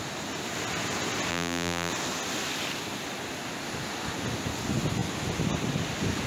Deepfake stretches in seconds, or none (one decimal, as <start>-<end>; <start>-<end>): 1.3-1.9